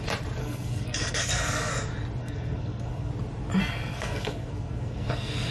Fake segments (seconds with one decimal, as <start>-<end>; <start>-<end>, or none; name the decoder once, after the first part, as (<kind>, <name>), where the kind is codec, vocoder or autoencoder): 0.4-1.7 (codec, SNAC); 2.2-3.1; 3.6-5.5